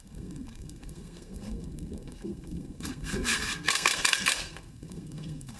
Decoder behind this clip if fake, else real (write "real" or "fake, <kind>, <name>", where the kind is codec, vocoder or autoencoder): fake, codec, SNAC